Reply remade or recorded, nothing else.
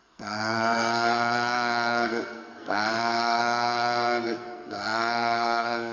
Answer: remade